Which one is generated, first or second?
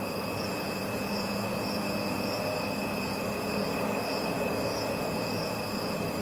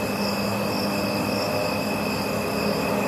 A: first